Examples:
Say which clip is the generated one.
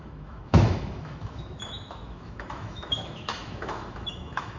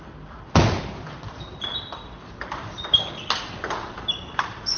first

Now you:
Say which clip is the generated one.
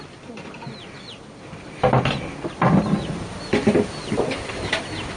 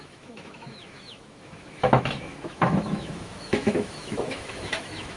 second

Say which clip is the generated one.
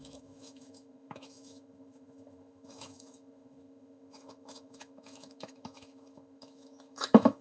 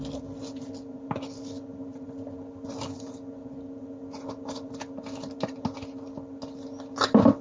first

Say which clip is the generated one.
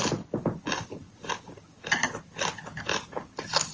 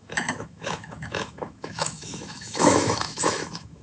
second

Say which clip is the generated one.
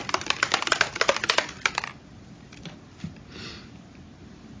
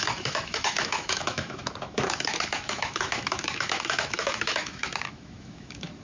second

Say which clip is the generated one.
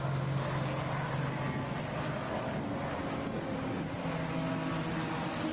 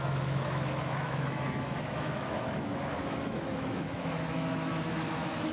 second